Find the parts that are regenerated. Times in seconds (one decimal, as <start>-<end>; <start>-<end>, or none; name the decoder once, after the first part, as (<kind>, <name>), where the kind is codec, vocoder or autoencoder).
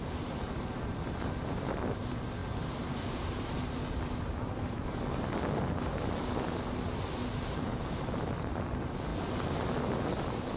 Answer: none